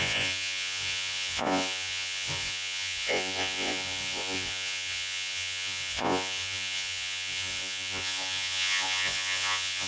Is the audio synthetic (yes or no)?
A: yes